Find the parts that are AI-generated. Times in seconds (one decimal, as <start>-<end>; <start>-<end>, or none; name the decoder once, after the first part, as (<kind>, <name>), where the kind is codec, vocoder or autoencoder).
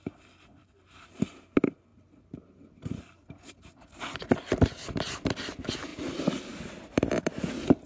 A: none